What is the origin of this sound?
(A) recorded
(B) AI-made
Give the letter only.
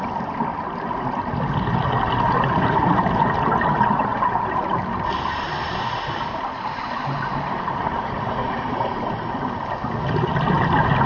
A